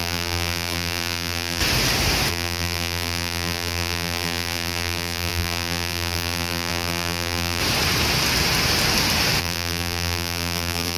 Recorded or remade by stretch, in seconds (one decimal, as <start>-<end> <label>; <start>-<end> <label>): 0.0-1.6 remade; 1.6-2.3 recorded; 2.3-7.6 remade; 7.6-9.4 recorded; 9.4-11.0 remade